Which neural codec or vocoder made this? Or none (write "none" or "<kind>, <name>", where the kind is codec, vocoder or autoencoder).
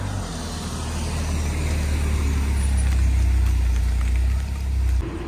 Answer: none